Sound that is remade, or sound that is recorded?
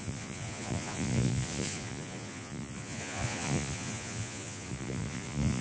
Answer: remade